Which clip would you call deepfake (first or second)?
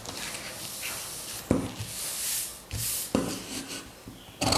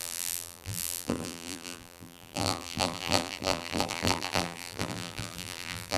second